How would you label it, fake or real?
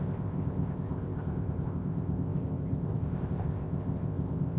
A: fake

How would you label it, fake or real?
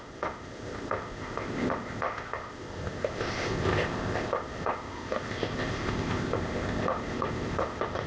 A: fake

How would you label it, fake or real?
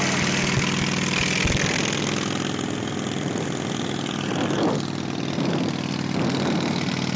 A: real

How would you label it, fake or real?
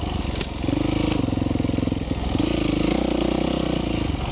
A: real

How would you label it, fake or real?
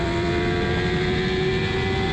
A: real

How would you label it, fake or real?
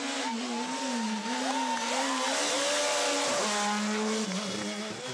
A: real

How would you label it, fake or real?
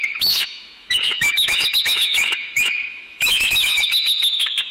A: fake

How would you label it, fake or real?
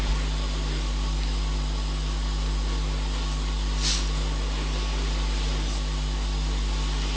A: real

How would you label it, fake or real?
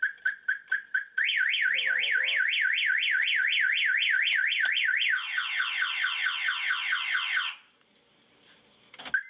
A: real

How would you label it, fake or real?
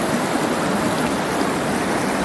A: real